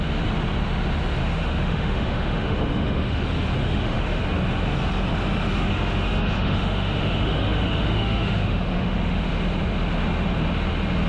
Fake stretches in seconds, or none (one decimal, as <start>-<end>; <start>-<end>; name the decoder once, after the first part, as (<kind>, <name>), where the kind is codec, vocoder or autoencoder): 1.2-3.2 (autoencoder, DAC-VAE); 3.6-4.2; 5.5-9.3